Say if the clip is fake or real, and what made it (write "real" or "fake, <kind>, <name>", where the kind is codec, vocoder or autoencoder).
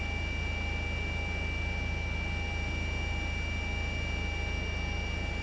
real